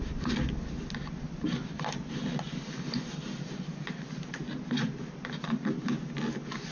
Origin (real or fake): real